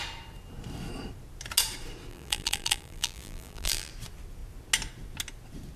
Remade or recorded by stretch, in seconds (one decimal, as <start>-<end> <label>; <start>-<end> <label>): 0.0-2.1 recorded; 2.1-3.9 remade; 3.9-5.8 recorded